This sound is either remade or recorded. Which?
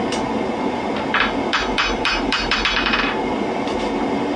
remade